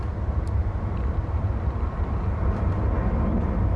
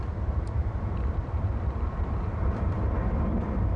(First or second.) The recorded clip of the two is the first